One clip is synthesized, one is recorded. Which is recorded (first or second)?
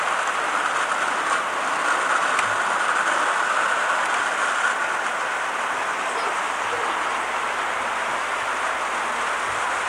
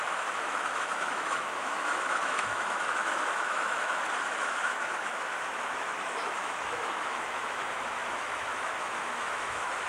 first